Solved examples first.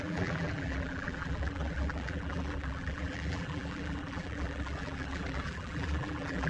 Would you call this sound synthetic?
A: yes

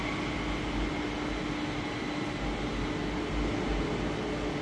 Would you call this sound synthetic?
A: no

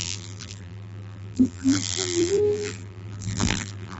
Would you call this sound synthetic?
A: yes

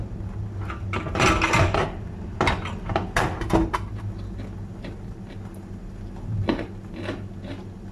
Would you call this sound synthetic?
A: no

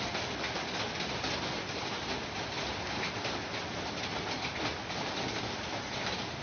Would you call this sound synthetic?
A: no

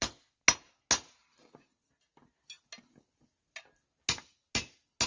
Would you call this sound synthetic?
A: no